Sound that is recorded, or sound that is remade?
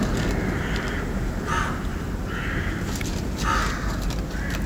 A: recorded